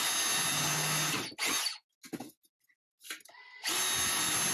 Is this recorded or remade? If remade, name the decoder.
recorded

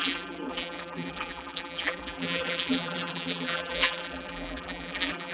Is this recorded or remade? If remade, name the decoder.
remade, vocoder, BigVGAN v2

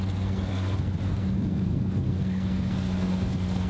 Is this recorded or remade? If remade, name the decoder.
remade, codec, SNAC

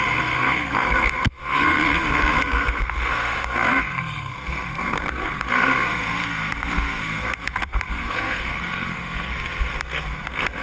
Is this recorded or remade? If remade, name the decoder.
remade, codec, SNAC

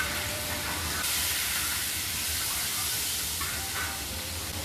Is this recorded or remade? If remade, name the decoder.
remade, vocoder, BigVGAN v2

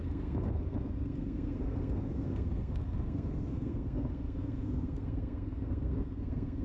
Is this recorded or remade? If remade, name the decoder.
remade, codec, SNAC